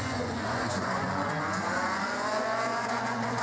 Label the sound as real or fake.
fake